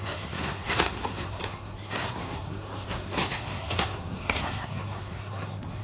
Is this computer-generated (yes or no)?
yes